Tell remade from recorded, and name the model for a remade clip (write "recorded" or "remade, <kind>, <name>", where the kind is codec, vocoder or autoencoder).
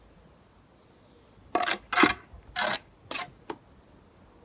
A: recorded